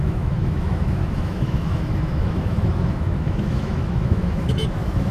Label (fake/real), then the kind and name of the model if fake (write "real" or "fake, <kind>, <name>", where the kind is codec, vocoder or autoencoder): fake, autoencoder, DAC-VAE